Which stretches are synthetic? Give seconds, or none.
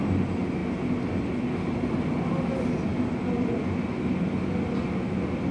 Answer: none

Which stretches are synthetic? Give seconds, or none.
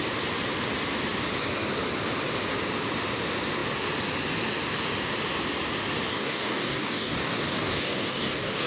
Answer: 6.1-8.7 (codec, DAC)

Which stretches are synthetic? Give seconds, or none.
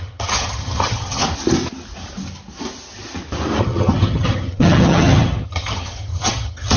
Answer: 0.0-1.2 (vocoder, HiFi-GAN); 3.6-6.8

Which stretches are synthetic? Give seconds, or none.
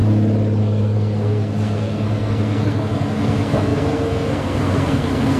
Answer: 0.6-5.4 (codec, SNAC)